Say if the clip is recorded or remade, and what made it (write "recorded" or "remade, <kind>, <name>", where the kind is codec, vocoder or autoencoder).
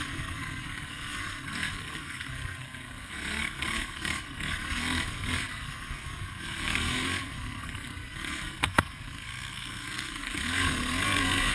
remade, codec, SNAC